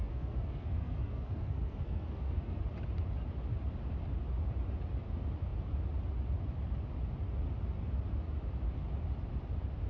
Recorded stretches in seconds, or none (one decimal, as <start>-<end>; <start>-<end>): 2.6-9.9